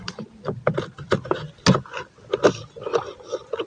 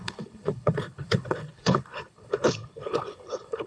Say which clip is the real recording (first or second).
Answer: first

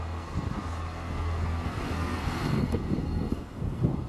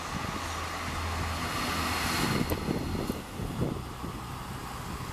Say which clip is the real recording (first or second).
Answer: second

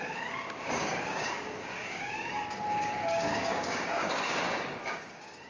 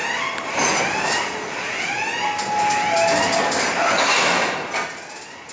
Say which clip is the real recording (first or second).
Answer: second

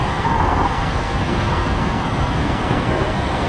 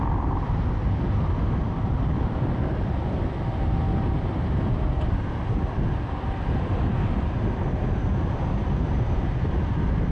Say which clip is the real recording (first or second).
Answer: second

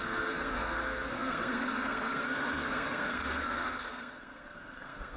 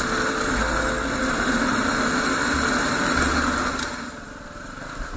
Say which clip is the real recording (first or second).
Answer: second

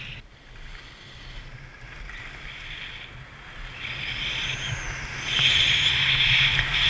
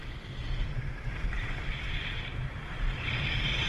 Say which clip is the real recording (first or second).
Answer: first